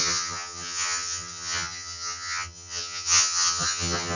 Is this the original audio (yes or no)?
no